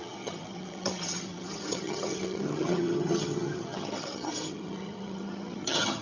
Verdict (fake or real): fake